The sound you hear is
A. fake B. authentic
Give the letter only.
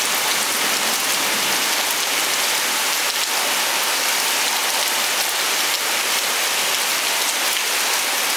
B